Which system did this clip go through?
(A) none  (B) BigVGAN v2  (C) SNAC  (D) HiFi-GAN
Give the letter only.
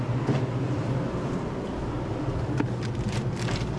B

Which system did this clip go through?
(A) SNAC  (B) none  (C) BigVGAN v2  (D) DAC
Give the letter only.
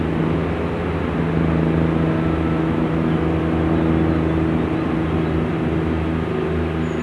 B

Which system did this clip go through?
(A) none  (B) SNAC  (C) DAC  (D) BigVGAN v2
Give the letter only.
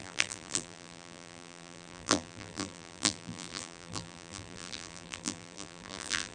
D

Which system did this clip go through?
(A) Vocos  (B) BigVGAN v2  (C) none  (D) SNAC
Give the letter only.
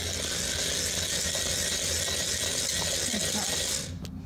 C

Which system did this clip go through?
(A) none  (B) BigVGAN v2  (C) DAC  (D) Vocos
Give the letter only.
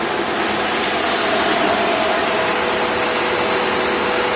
A